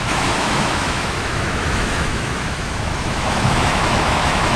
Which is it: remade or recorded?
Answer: remade